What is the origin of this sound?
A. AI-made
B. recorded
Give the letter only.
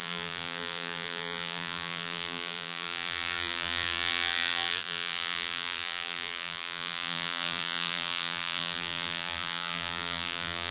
A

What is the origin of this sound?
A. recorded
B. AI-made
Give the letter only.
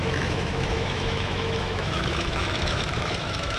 B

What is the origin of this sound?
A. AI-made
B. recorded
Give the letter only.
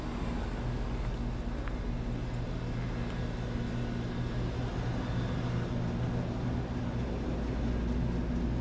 B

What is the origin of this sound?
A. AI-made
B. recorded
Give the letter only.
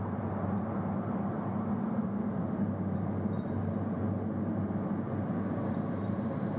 B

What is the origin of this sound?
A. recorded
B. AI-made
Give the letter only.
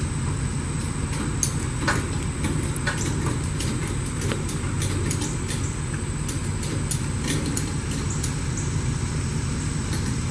A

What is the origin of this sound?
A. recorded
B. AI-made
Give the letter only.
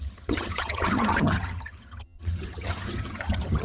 B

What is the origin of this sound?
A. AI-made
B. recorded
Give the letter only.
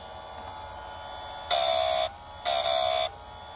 B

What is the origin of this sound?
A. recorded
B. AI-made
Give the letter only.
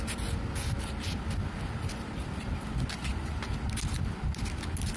A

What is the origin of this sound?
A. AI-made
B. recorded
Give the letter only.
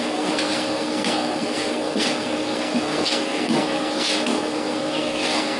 A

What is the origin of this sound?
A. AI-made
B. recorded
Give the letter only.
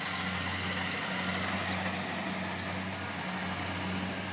B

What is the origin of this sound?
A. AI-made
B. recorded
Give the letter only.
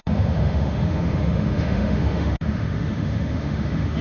A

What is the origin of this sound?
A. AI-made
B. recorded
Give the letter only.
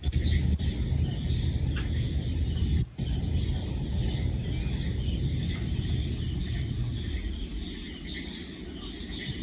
B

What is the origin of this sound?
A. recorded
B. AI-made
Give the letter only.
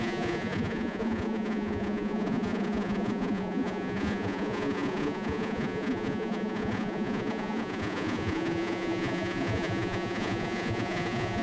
B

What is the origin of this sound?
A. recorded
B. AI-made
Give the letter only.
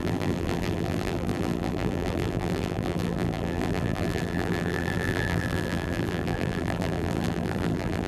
B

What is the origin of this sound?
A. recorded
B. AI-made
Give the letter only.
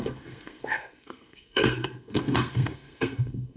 B